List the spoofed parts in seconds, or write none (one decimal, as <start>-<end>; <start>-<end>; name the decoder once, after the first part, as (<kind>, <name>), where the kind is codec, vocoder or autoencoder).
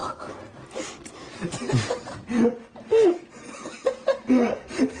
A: none